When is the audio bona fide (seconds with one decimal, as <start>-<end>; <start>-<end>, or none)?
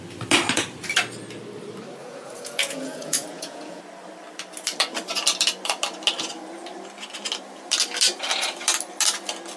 0.0-2.0; 3.8-9.6